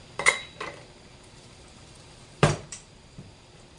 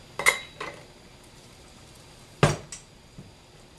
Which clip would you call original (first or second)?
second